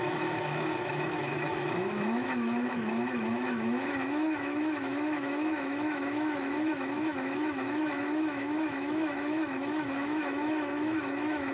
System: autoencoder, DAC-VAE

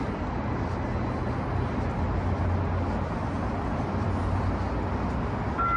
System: none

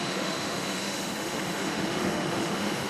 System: autoencoder, DAC-VAE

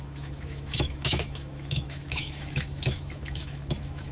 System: autoencoder, DAC-VAE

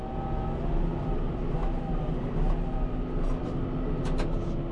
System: none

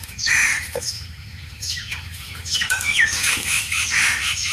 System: autoencoder, DAC-VAE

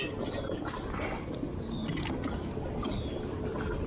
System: none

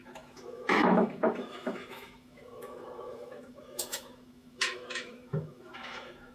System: autoencoder, DAC-VAE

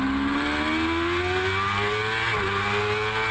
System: none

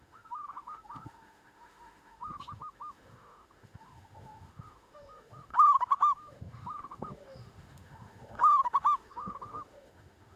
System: autoencoder, DAC-VAE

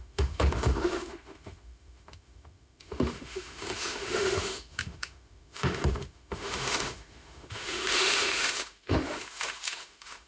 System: autoencoder, DAC-VAE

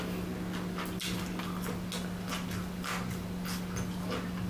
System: none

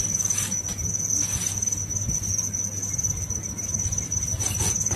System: none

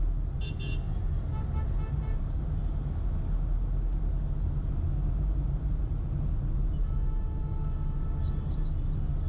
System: none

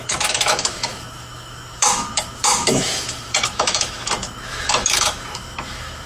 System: autoencoder, DAC-VAE